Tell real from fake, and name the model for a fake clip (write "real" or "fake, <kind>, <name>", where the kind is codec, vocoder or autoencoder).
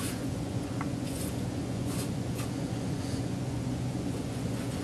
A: fake, vocoder, Vocos